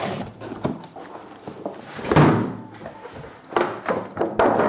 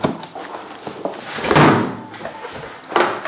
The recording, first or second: second